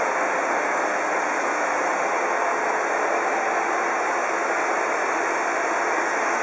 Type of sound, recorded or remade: recorded